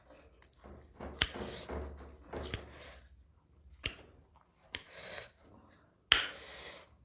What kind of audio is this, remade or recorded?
recorded